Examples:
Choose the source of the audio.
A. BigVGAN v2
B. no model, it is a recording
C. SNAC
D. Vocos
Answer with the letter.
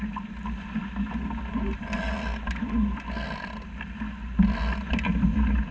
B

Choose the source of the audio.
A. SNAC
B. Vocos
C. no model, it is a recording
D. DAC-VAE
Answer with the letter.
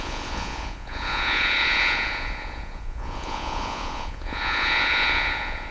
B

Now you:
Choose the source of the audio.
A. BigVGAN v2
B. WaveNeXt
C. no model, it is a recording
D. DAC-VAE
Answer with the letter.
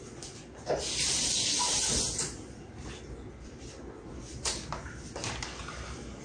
C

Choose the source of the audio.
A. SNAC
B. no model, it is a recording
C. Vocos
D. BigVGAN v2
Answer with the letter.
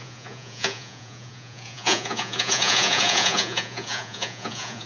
C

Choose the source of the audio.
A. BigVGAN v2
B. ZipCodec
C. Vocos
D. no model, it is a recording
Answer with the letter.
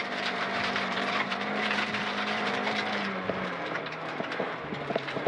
A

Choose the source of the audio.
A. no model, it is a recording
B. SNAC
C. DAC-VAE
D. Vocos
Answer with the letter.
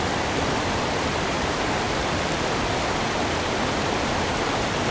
A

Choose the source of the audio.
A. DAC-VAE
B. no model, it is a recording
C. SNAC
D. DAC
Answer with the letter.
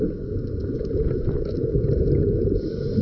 B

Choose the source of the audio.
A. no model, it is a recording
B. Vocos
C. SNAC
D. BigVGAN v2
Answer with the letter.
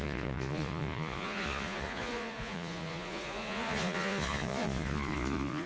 B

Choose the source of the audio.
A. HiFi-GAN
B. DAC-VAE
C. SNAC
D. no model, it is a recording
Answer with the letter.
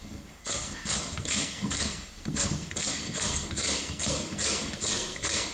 C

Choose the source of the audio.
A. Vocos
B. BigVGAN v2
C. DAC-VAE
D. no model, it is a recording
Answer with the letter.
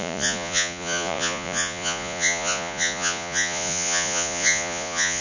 A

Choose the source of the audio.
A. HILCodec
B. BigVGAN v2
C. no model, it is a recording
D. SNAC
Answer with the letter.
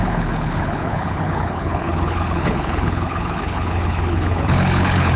A